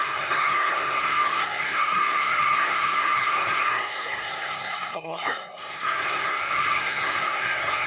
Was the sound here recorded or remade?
remade